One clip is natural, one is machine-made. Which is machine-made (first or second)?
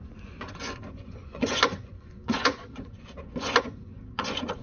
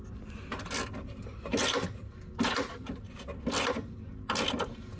first